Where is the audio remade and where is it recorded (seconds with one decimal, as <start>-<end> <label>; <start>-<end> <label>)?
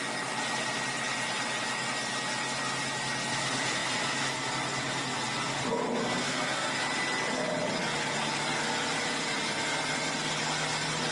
0.0-6.0 recorded; 6.0-6.7 remade; 6.7-11.1 recorded